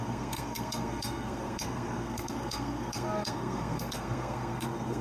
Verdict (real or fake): fake